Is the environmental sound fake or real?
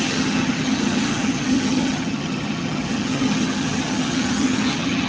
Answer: fake